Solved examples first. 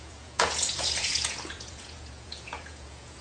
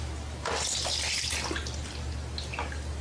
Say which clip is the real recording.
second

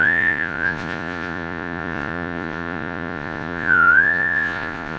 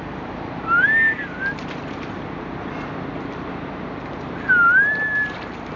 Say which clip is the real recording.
second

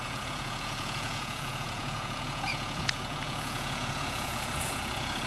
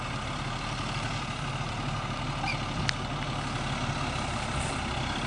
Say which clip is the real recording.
second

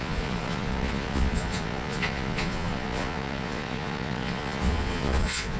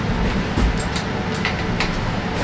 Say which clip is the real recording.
second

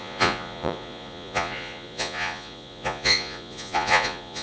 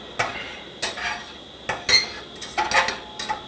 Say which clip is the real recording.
second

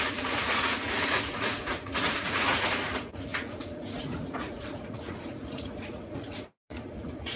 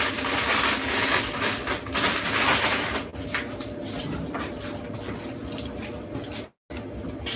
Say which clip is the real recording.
second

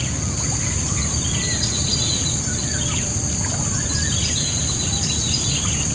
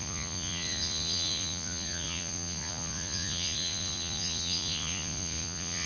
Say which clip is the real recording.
first